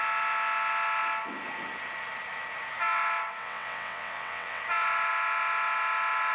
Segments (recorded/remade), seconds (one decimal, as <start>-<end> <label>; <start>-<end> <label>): 0.0-3.4 recorded; 3.4-4.6 remade; 4.6-6.3 recorded